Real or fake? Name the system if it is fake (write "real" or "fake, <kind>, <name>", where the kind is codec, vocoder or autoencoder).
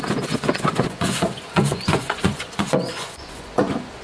fake, vocoder, Vocos